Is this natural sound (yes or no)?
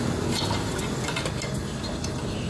yes